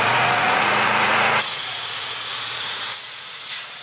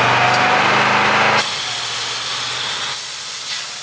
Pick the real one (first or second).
second